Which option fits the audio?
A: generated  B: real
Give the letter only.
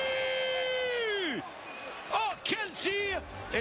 B